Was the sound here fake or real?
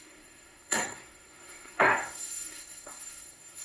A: fake